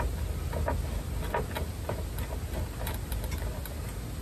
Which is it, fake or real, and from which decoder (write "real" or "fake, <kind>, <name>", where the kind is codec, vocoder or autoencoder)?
real